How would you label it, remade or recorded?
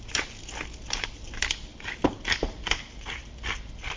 recorded